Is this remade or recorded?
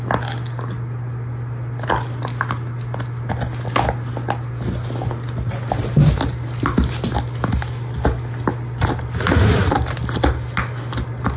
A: recorded